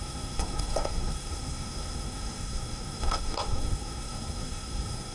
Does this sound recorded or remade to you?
remade